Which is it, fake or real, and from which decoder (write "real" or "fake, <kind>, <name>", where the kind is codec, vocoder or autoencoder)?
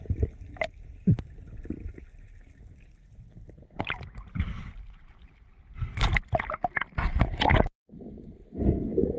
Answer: real